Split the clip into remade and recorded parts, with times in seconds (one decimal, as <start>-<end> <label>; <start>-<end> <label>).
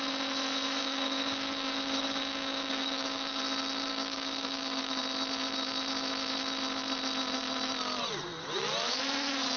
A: 0.0-0.8 recorded; 0.8-3.4 remade; 3.4-3.9 recorded; 3.9-5.0 remade; 5.0-9.6 recorded